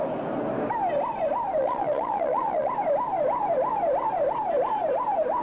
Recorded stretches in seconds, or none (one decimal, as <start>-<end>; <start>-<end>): 0.0-1.6; 2.7-5.4